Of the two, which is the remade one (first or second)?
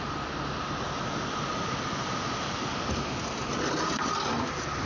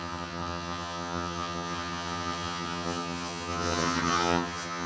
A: second